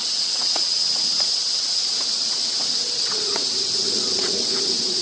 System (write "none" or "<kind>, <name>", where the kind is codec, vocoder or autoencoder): vocoder, WaveNeXt